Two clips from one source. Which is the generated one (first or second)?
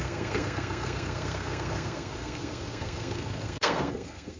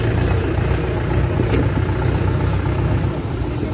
first